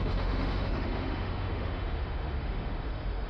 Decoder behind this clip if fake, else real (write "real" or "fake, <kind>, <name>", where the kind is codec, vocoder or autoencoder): fake, autoencoder, DAC-VAE